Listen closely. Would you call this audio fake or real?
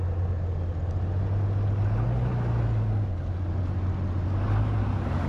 real